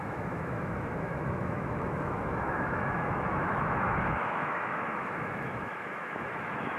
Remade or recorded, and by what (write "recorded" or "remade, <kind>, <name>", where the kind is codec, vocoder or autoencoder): remade, autoencoder, DAC-VAE